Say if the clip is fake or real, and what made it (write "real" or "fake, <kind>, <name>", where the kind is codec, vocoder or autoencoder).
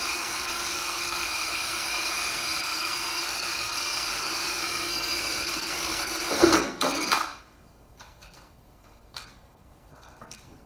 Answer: fake, codec, SNAC